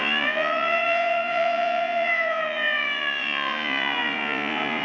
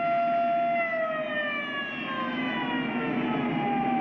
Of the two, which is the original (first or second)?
second